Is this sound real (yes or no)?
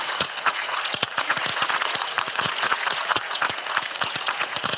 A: no